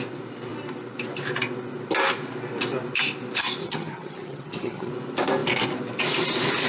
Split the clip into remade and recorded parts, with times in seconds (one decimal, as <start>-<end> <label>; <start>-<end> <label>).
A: 0.0-3.6 recorded; 3.6-4.9 remade; 4.9-6.7 recorded